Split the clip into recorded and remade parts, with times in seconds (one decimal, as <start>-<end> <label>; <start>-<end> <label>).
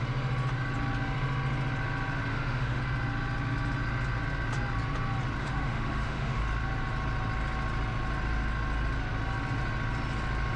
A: 0.0-2.3 recorded; 2.3-2.8 remade; 2.8-5.4 recorded; 5.4-6.4 remade; 6.4-10.6 recorded